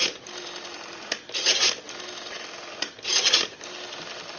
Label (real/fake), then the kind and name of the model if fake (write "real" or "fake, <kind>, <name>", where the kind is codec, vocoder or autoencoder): real